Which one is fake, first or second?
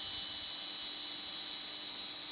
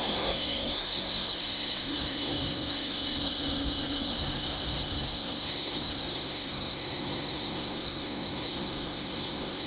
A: second